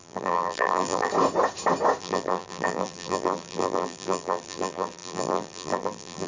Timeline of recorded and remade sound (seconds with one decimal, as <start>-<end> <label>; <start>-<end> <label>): 0.0-1.1 remade; 1.1-2.0 recorded; 2.0-6.3 remade

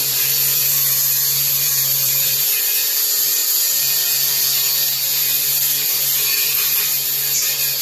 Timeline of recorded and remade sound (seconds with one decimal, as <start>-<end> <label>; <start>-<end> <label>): 0.0-0.6 recorded; 0.6-2.5 remade; 2.5-7.8 recorded

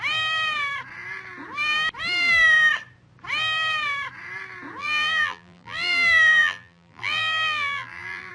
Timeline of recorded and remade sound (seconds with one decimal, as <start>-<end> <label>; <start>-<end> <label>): 0.0-4.8 recorded; 4.8-8.3 remade

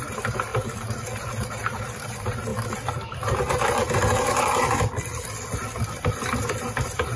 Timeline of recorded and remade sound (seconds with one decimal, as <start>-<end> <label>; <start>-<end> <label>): 0.0-0.5 remade; 0.5-1.3 recorded; 1.3-2.5 remade; 2.5-6.4 recorded; 6.4-7.2 remade